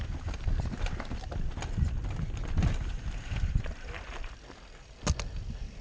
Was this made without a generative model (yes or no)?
yes